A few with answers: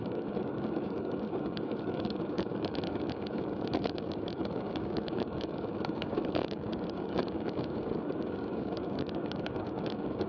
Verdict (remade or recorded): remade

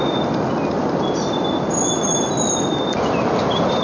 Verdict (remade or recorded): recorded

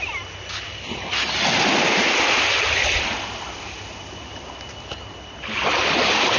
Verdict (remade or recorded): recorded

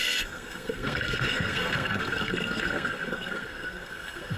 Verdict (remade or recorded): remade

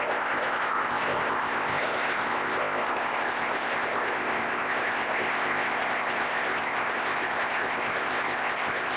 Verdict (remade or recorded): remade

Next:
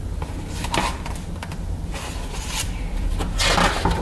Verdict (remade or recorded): remade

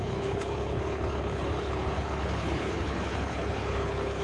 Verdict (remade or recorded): remade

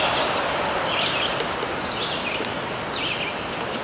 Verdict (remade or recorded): recorded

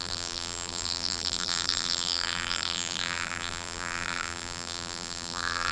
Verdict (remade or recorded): remade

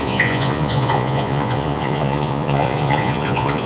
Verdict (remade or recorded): remade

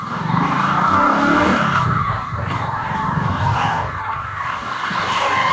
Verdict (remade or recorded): remade